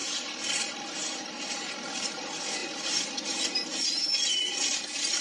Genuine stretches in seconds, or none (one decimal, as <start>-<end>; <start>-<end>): 0.8-5.2

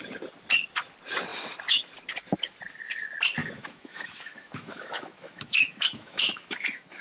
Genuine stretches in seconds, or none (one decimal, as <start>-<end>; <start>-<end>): 0.0-3.4